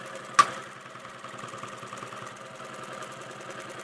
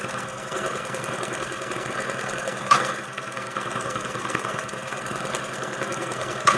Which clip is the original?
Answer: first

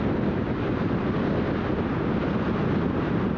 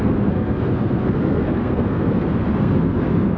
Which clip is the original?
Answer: first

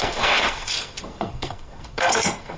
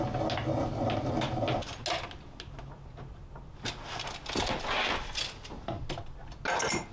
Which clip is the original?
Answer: second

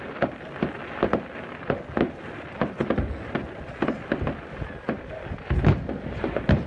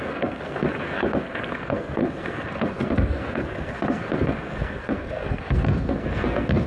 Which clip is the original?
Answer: first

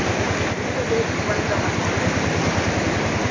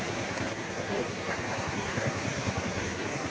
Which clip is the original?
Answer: first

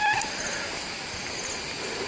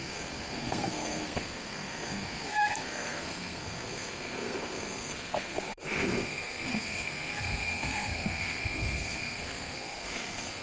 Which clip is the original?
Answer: first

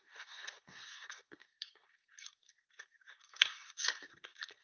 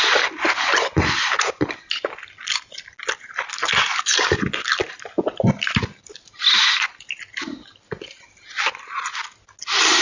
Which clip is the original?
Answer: second